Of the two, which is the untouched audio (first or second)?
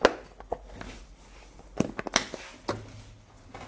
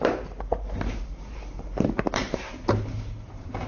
first